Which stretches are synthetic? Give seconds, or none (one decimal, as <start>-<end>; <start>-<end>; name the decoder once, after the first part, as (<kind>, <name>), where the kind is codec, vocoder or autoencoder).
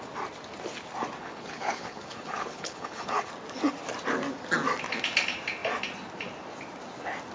1.2-3.3 (codec, HILCodec)